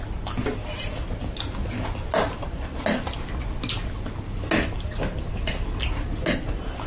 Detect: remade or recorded recorded